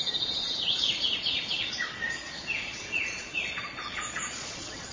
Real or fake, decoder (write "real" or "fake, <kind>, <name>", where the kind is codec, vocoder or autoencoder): fake, vocoder, Vocos